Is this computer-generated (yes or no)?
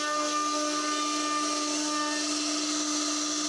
no